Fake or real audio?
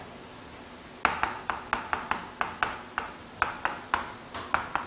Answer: real